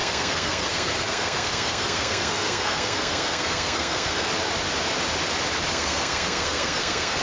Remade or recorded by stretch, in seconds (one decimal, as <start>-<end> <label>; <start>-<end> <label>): 0.0-4.3 remade; 4.3-5.7 recorded; 5.7-7.2 remade